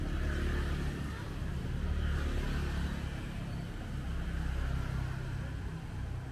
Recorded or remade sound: recorded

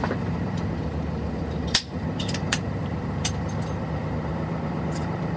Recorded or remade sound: remade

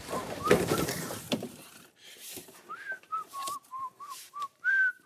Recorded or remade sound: remade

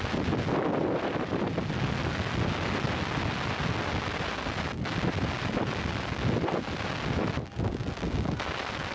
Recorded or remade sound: recorded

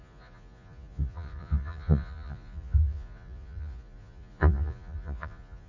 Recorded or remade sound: remade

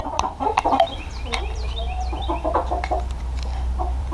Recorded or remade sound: remade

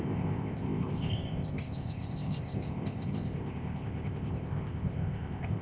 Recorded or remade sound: remade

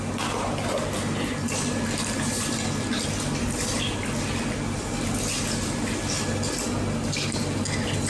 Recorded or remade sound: recorded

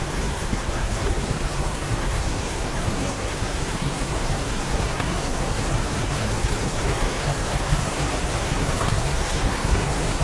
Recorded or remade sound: remade